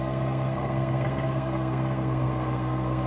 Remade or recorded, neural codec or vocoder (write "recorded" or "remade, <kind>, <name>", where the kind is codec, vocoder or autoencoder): remade, codec, SNAC